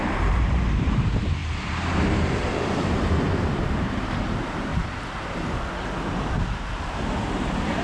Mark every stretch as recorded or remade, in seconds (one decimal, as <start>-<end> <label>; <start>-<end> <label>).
0.0-4.7 remade; 4.7-6.1 recorded; 6.1-7.8 remade